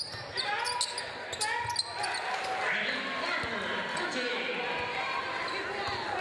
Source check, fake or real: real